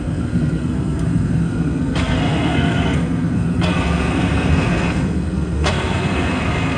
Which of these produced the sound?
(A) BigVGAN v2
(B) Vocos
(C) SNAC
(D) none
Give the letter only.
C